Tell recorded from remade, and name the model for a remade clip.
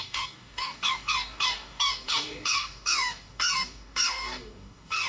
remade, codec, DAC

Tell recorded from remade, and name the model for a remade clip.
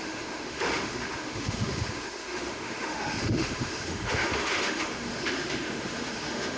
remade, autoencoder, DAC-VAE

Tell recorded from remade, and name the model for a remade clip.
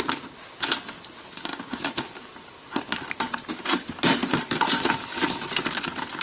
recorded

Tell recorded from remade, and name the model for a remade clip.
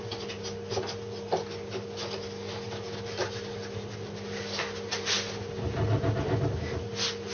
recorded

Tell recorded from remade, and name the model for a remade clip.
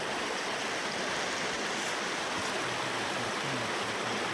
recorded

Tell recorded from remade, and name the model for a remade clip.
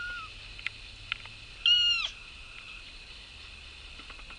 recorded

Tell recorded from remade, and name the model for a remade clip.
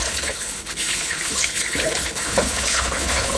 remade, codec, HILCodec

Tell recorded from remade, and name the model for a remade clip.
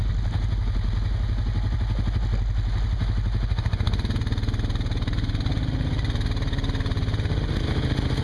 recorded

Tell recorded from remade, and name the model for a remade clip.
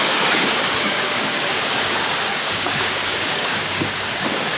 remade, codec, DAC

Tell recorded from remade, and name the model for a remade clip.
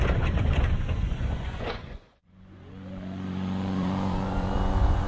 remade, vocoder, Vocos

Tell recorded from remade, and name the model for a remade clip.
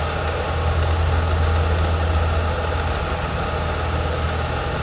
recorded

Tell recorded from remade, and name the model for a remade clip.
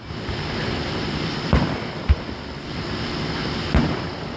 remade, vocoder, BigVGAN v2